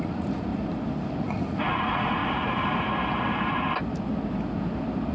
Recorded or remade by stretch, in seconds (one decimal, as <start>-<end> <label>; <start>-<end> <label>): 0.0-0.5 remade; 0.5-1.2 recorded; 1.2-2.2 remade; 2.2-5.1 recorded

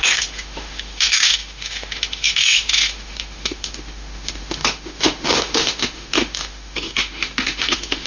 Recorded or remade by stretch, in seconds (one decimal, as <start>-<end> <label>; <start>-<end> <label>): 0.0-8.1 remade

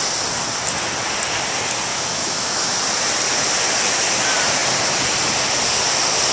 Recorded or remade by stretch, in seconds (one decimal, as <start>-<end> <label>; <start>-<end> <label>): 0.0-1.9 recorded; 1.9-2.7 remade; 2.7-6.3 recorded